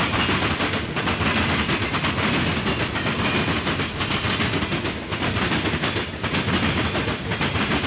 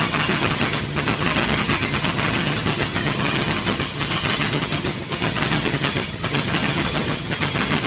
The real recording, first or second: first